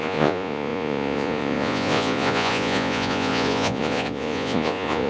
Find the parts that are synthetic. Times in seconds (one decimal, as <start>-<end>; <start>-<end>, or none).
0.0-5.1